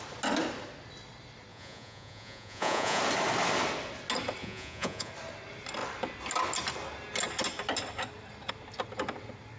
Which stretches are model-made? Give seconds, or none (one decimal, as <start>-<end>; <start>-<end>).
1.5-3.0; 4.4-5.1

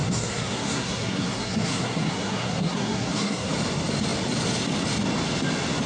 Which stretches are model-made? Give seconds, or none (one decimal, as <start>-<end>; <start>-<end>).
0.0-3.5

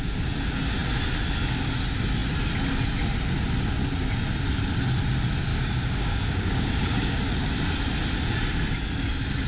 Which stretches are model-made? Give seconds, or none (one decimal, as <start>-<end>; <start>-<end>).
5.5-7.2

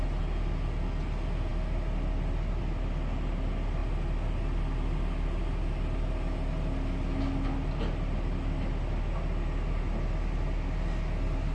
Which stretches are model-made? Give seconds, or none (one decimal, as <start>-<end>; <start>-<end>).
none

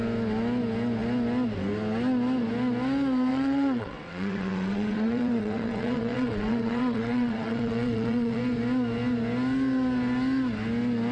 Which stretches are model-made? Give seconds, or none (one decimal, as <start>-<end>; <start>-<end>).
3.3-8.4